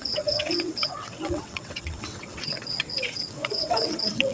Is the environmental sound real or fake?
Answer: fake